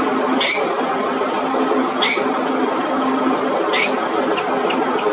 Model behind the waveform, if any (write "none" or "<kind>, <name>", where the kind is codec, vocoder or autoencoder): none